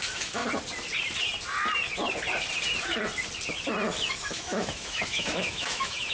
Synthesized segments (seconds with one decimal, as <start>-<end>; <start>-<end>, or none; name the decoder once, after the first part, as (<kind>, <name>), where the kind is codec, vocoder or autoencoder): 0.0-0.4 (autoencoder, DAC-VAE); 4.1-6.1